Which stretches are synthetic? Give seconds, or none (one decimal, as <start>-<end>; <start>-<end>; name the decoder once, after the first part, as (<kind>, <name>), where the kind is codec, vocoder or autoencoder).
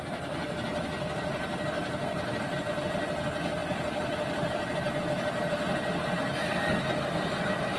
none